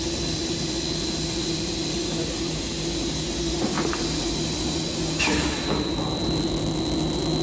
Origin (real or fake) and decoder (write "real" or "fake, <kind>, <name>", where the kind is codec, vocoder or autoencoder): real